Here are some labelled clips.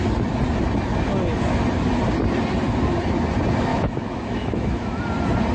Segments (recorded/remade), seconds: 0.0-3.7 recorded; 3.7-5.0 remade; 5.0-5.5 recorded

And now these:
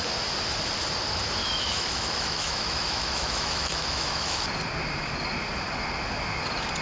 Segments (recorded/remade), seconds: 0.0-1.4 recorded; 1.4-4.4 remade; 4.4-6.8 recorded

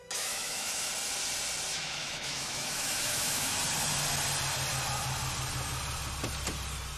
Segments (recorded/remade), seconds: 0.0-0.9 remade; 0.9-1.7 recorded; 1.7-3.6 remade; 3.6-7.0 recorded

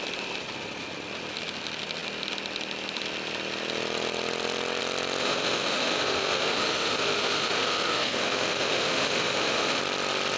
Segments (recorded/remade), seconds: 0.0-5.2 recorded; 5.2-9.8 remade; 9.8-10.4 recorded

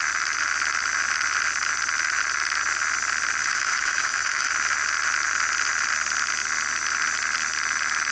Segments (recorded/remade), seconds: 0.0-3.4 recorded; 3.4-4.5 remade; 4.5-8.1 recorded